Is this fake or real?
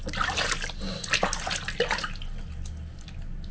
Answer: real